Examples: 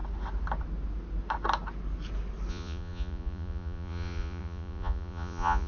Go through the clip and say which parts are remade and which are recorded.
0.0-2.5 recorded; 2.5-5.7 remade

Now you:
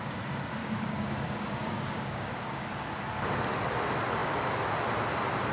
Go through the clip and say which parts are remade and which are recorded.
0.0-0.6 recorded; 0.6-2.7 remade; 2.7-5.5 recorded